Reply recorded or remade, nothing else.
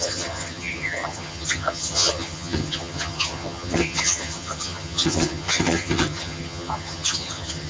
remade